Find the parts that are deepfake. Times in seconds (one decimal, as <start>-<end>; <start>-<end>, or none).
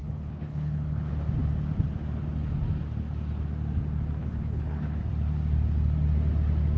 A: 0.0-1.1; 4.2-5.1